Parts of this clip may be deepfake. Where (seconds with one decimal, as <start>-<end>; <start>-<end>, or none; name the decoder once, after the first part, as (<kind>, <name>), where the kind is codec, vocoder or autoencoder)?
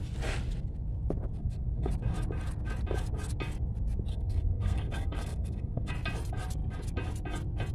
1.4-1.9 (codec, SNAC); 4.1-5.9